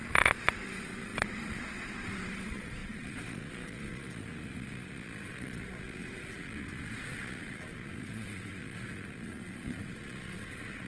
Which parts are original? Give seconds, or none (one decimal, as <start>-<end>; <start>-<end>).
none